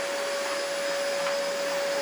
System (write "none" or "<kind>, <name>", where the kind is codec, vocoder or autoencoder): none